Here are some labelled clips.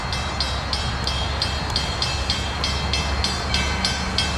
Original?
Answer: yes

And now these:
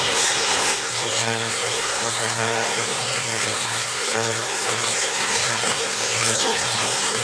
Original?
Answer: no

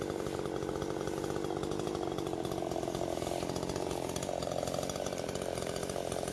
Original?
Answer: yes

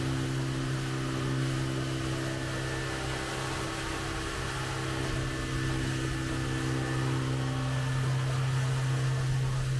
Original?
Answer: yes